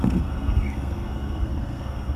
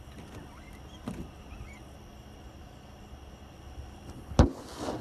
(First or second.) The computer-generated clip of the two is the first